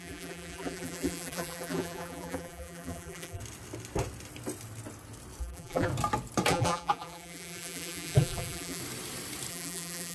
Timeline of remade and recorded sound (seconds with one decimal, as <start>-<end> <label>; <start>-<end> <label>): 0.0-3.4 remade; 3.4-5.4 recorded; 5.4-5.9 remade; 5.9-6.5 recorded; 6.5-8.8 remade; 8.8-9.5 recorded; 9.5-10.1 remade